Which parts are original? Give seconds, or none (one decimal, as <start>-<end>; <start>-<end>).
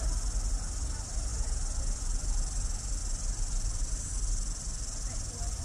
0.0-5.6